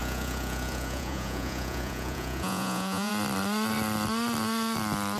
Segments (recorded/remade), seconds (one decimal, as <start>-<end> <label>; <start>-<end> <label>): 0.0-3.1 remade; 3.1-5.2 recorded